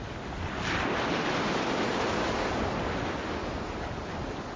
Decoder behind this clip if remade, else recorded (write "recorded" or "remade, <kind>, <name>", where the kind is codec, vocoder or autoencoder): recorded